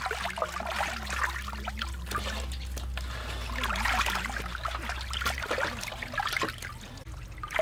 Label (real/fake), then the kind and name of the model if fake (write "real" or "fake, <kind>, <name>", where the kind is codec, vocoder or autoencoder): real